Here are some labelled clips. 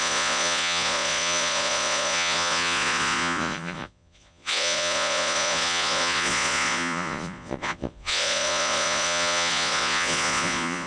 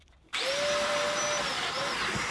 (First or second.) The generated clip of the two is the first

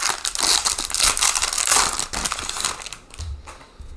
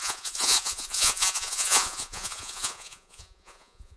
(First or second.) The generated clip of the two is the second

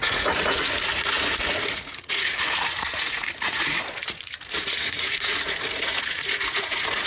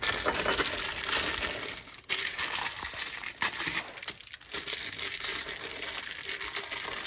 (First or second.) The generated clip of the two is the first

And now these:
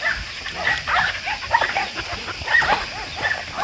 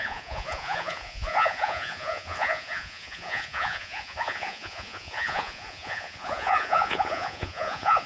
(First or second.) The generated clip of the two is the second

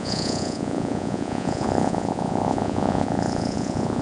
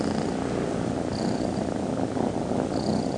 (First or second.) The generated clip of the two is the first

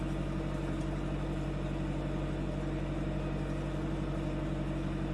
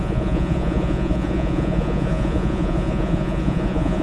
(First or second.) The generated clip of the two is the second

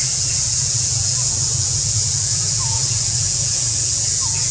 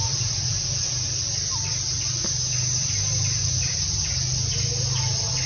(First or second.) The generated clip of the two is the first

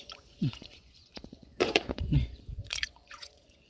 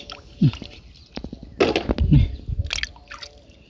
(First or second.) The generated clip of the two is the first